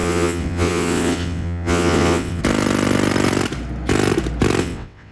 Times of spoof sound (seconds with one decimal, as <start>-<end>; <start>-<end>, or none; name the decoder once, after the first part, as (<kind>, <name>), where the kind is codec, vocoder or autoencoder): 0.0-2.4 (vocoder, WaveNeXt); 4.6-5.1